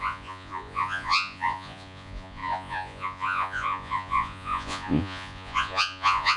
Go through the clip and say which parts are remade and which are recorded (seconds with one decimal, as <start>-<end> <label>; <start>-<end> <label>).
0.0-6.4 remade